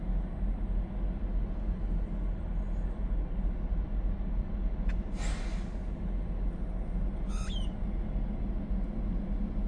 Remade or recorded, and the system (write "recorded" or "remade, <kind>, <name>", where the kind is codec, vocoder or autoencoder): recorded